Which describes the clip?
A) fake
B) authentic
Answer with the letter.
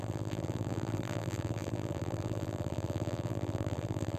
A